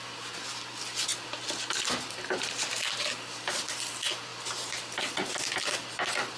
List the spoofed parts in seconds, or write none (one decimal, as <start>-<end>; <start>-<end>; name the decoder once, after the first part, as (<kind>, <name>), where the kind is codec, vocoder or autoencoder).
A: none